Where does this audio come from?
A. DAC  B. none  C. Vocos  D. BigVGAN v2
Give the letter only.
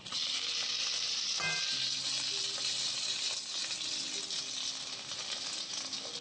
B